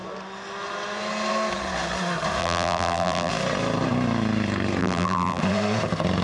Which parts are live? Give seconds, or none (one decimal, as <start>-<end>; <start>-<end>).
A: 0.0-2.4; 3.3-4.8; 5.4-6.2